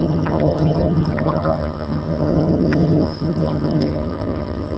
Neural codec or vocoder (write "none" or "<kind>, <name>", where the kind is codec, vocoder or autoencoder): vocoder, HiFi-GAN